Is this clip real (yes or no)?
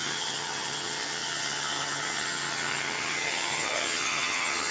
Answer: no